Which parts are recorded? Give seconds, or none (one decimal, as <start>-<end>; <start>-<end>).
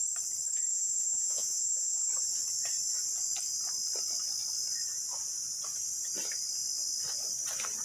0.0-0.7; 2.1-7.8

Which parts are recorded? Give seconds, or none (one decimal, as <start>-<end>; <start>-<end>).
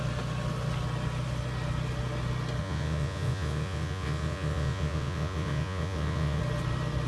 0.0-2.6; 6.4-7.1